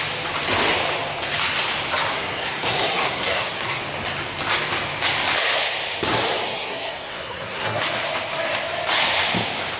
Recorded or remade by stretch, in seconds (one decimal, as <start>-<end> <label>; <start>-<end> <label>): 0.0-2.1 recorded; 2.1-3.8 remade; 3.8-6.5 recorded; 6.5-7.8 remade; 7.8-9.8 recorded